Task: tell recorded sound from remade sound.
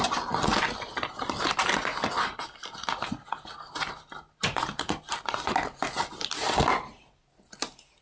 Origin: recorded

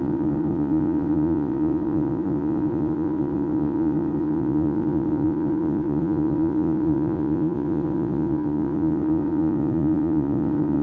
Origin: remade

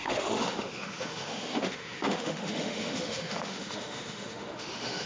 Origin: remade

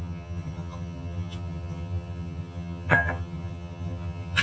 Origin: remade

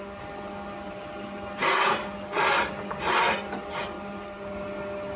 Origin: recorded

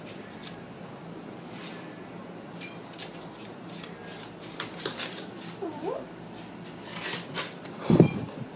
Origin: recorded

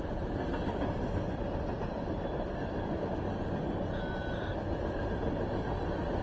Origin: recorded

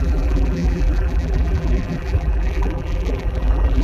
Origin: remade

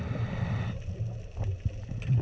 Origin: recorded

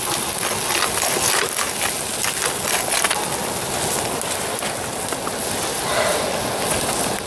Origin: recorded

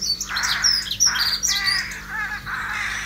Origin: remade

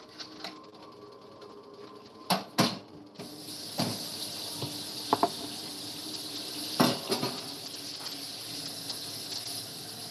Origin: recorded